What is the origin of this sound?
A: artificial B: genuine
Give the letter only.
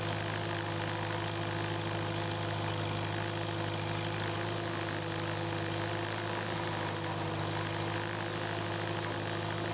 B